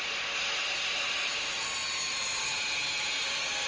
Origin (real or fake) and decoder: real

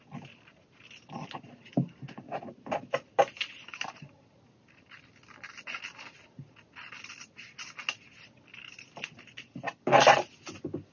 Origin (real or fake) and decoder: real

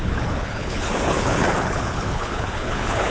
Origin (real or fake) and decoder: fake, codec, HILCodec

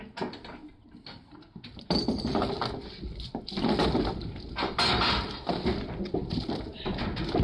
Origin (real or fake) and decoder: real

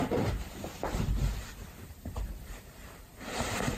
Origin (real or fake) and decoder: fake, vocoder, BigVGAN v2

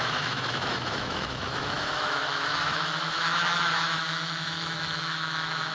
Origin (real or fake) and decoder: fake, autoencoder, DAC-VAE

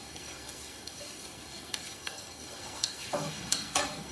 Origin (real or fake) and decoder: fake, codec, SNAC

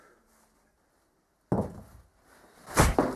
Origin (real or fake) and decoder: real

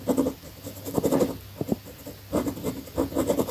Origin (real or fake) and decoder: real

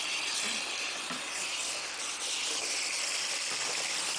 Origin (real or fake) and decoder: real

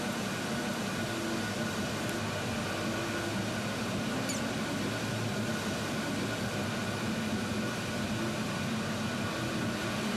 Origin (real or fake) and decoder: real